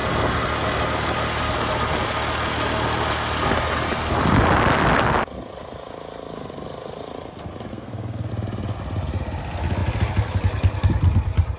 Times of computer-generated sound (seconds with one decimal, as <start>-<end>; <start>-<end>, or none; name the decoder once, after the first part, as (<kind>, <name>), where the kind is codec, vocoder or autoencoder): 7.7-8.3 (codec, SNAC)